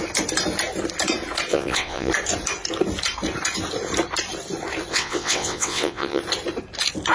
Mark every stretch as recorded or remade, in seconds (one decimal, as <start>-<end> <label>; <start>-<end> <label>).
0.0-1.5 recorded; 1.5-2.1 remade; 2.1-4.9 recorded; 4.9-6.2 remade; 6.2-7.1 recorded